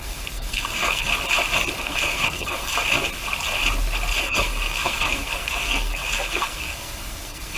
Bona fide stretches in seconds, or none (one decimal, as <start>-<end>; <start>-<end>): 1.1-1.8; 2.7-4.2